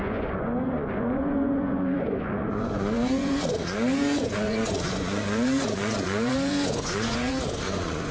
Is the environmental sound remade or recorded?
remade